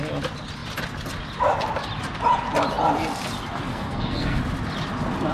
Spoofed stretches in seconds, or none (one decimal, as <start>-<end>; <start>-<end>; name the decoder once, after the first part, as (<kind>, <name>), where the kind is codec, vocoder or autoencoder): 3.7-4.4 (codec, SNAC)